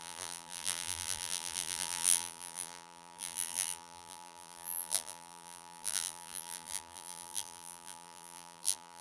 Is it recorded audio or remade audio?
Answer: remade